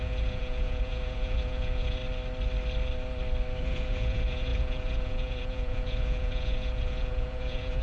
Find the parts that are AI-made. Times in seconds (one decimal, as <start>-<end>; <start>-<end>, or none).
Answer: 0.0-2.0; 3.6-7.8